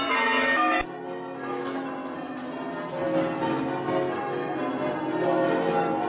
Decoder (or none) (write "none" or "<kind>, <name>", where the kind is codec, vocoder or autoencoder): none